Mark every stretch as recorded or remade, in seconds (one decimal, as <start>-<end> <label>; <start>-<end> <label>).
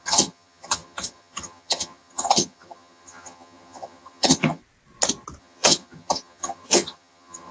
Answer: 0.0-4.6 remade; 4.6-5.4 recorded; 5.4-7.5 remade